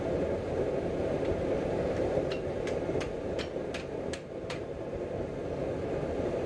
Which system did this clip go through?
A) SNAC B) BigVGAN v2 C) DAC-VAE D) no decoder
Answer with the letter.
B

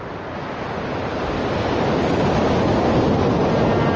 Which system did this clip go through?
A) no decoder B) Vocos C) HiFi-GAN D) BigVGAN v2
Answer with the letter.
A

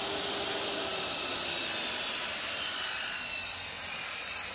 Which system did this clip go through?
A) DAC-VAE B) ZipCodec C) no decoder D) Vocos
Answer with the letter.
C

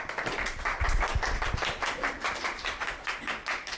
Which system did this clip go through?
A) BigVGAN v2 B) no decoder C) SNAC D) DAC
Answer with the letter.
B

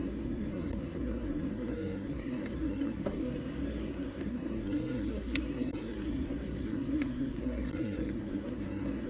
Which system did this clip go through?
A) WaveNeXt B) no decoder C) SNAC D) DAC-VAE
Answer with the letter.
C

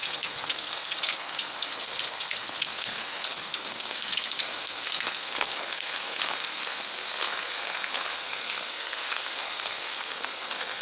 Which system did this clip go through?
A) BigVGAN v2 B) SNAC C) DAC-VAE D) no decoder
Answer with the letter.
B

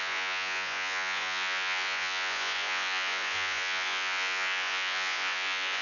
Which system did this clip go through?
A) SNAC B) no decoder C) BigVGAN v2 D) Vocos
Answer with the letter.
D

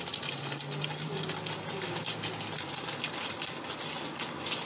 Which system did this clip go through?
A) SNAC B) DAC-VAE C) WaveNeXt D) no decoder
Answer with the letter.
D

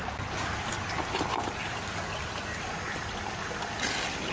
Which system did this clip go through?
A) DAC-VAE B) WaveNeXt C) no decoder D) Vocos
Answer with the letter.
C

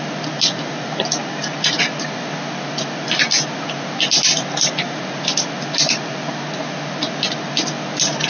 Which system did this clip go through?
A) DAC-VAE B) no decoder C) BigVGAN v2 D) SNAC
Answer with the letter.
B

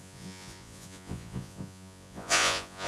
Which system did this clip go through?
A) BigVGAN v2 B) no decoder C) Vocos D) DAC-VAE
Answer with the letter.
C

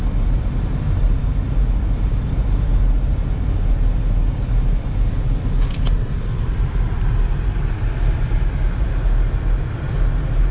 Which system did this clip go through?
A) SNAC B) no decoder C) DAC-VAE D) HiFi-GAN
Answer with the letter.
B